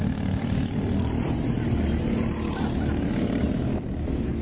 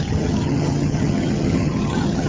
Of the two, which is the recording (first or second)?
first